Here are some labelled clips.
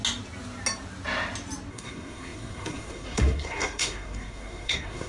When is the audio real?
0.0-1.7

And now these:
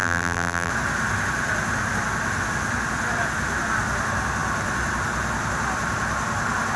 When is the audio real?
0.7-6.8

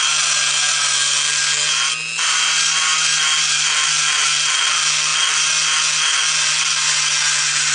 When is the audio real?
0.0-7.7

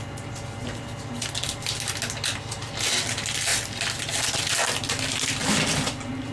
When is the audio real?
0.0-6.3